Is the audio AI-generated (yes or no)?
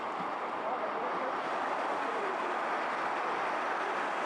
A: yes